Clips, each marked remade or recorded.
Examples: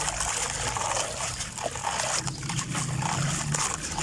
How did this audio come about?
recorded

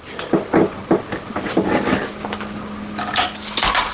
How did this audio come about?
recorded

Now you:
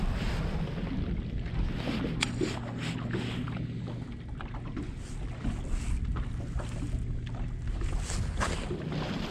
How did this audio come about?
recorded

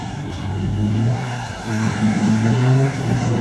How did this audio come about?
remade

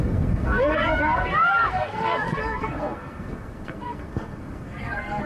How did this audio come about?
remade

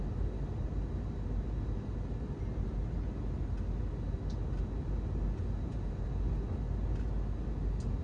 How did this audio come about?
recorded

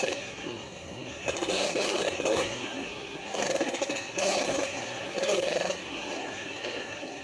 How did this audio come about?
remade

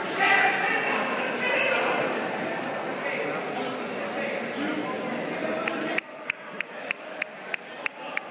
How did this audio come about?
recorded